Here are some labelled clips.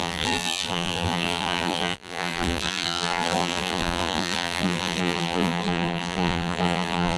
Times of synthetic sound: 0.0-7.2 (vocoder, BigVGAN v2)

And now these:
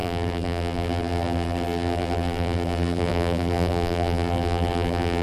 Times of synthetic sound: 0.0-5.2 (vocoder, BigVGAN v2)

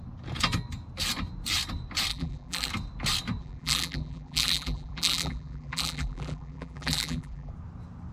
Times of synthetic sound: 2.1-2.7 (vocoder, BigVGAN v2); 3.4-7.5